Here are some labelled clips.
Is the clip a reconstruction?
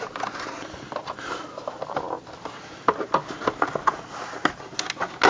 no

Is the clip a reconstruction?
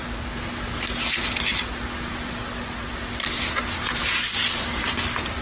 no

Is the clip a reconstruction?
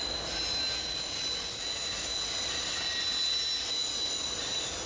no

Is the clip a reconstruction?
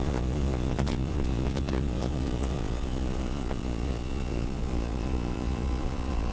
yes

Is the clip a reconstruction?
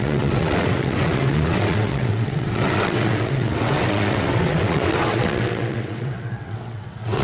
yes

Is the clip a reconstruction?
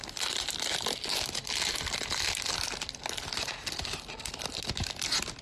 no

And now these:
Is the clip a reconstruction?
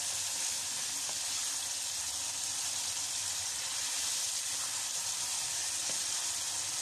no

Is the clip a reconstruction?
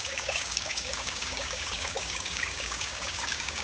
yes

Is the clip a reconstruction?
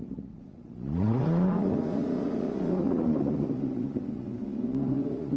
yes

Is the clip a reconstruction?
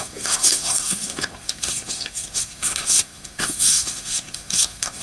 yes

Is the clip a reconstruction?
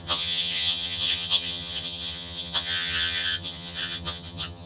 yes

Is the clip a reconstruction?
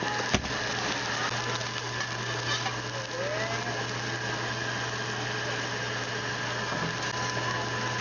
no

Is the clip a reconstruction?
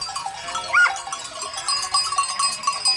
no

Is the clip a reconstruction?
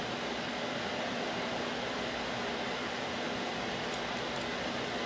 no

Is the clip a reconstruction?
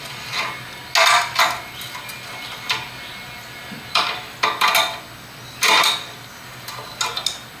no